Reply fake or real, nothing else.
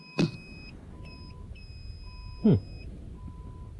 real